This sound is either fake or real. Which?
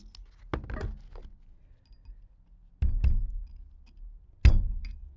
real